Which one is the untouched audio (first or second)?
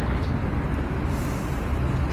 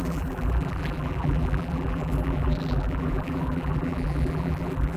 first